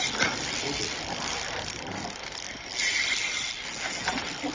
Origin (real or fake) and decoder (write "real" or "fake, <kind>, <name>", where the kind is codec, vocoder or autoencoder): real